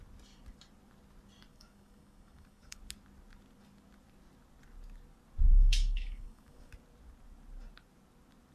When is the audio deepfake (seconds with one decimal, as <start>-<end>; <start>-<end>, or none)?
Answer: 1.5-2.8; 5.5-6.7